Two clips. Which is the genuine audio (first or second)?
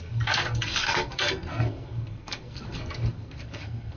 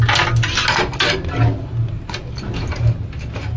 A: second